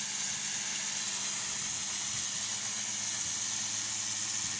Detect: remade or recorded recorded